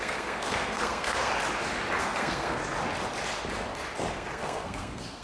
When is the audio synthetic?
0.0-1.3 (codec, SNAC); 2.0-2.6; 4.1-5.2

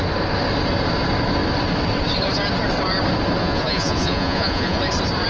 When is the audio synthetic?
3.4-4.8 (vocoder, Vocos)

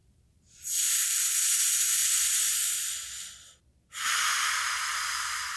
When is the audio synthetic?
0.0-1.2 (vocoder, BigVGAN v2); 2.0-2.9

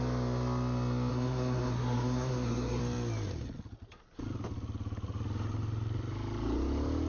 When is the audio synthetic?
1.1-2.8 (codec, SNAC)